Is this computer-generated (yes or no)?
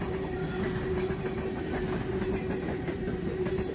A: no